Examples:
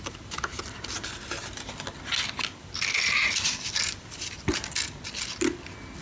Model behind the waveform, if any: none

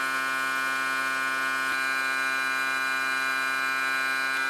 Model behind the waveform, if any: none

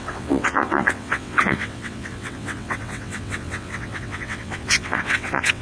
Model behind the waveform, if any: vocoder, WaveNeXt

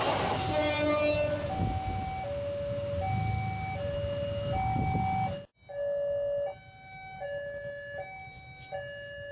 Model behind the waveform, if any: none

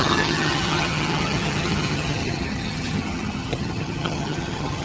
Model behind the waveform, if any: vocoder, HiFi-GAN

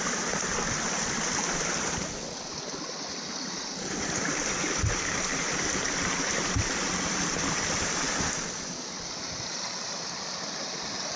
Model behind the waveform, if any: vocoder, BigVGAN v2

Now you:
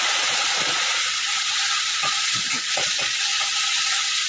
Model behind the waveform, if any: vocoder, Vocos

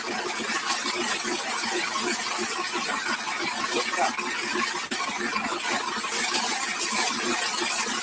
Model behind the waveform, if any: none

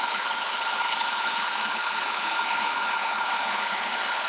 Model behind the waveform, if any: codec, HILCodec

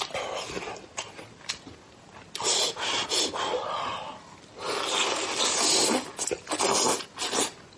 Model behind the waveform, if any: none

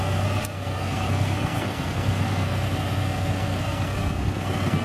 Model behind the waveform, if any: codec, SNAC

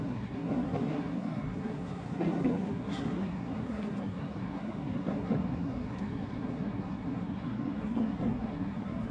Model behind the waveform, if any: codec, SNAC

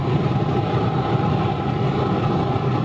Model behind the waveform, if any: none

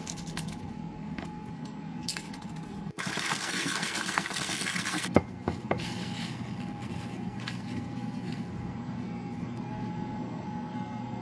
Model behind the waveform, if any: codec, SNAC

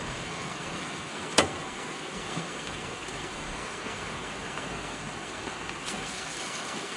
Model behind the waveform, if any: codec, SNAC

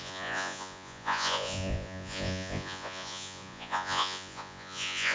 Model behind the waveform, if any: vocoder, Vocos